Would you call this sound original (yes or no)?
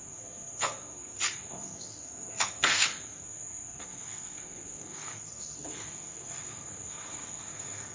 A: no